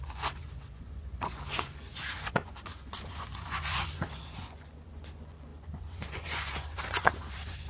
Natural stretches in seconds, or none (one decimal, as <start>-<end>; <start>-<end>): none